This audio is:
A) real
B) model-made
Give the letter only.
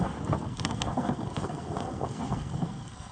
B